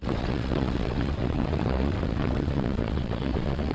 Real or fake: fake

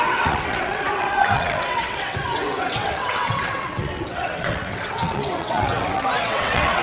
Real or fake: fake